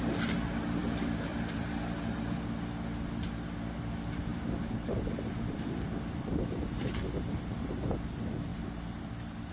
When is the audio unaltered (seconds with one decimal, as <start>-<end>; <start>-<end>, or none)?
0.0-0.8; 1.8-4.3; 6.6-8.5